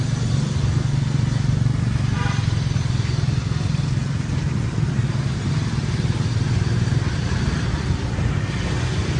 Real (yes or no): yes